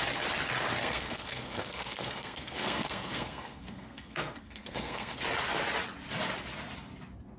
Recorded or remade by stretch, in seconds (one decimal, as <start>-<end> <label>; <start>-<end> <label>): 0.0-0.8 recorded; 0.8-5.2 remade; 5.2-7.4 recorded